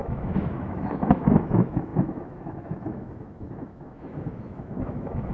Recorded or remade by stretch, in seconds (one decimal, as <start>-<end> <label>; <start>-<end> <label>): 0.0-5.3 remade

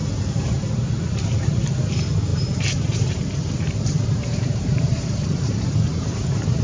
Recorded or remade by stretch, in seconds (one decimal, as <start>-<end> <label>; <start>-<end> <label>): 0.0-0.9 remade; 0.9-2.3 recorded; 2.3-6.6 remade

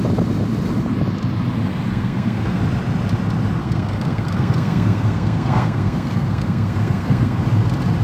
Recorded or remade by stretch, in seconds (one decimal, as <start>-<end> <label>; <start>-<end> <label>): 0.0-1.9 recorded; 1.9-2.6 remade; 2.6-3.6 recorded; 3.6-7.4 remade; 7.4-8.0 recorded